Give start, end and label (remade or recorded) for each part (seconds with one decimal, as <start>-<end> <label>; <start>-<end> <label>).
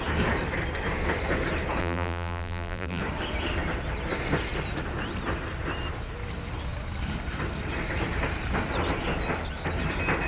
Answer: 0.0-1.8 recorded; 1.8-3.0 remade; 3.0-10.3 recorded